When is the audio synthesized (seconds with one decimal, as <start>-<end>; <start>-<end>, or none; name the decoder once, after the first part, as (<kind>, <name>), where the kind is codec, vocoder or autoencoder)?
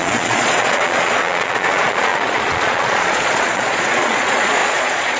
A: 0.0-5.2 (vocoder, Vocos)